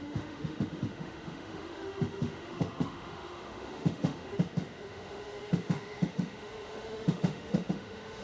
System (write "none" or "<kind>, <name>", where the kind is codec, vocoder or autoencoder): autoencoder, DAC-VAE